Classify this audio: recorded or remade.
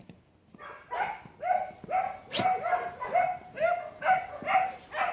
recorded